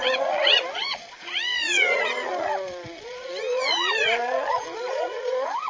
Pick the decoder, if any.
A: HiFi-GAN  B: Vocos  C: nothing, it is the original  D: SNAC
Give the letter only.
B